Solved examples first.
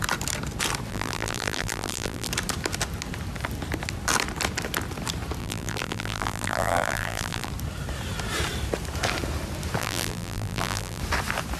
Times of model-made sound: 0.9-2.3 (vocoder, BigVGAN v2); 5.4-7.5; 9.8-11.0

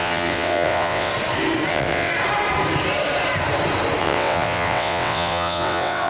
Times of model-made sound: 0.0-1.1 (vocoder, WaveNeXt); 1.7-2.1; 4.0-6.1

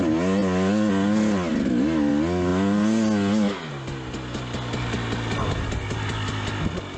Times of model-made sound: none

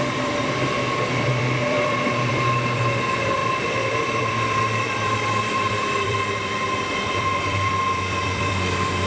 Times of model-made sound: 0.0-9.1 (vocoder, BigVGAN v2)

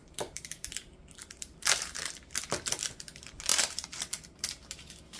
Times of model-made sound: 0.0-2.2 (vocoder, BigVGAN v2); 3.5-4.0

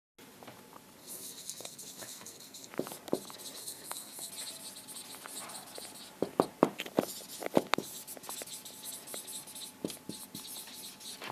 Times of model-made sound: 1.0-2.7 (codec, SNAC); 3.6-4.3

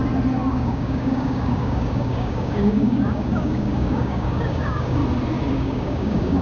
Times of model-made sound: 0.5-5.0 (codec, DAC); 5.5-6.4

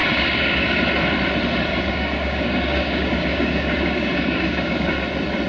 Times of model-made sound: 0.0-0.8 (codec, DAC); 1.7-5.0